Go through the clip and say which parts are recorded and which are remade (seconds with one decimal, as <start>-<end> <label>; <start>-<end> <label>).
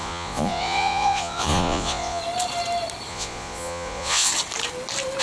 0.0-2.2 remade; 2.2-3.1 recorded; 3.1-4.3 remade; 4.3-5.2 recorded